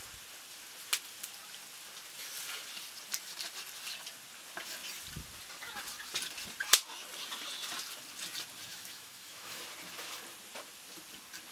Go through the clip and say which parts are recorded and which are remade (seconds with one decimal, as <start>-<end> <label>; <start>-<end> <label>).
0.0-8.7 recorded; 8.7-9.6 remade; 9.6-11.5 recorded